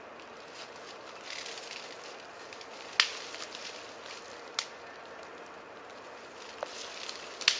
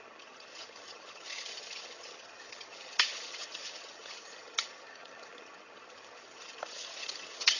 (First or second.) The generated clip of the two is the second